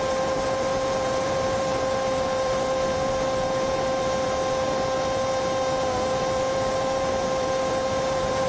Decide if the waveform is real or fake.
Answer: fake